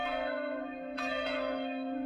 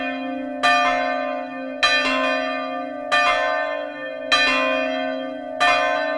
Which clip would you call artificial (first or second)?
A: first